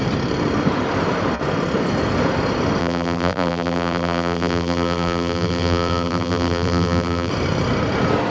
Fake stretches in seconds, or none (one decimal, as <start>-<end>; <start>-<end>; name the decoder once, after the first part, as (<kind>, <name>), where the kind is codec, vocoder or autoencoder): 2.8-7.3 (vocoder, BigVGAN v2)